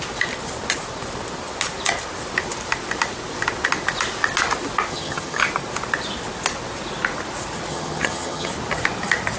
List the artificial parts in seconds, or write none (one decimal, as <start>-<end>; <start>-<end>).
4.9-5.5; 7.7-8.5